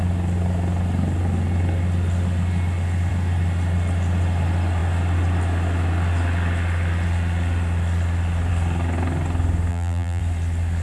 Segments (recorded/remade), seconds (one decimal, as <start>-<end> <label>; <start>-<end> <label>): 0.0-9.7 recorded; 9.7-10.2 remade; 10.2-10.8 recorded